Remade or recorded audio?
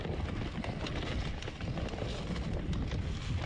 recorded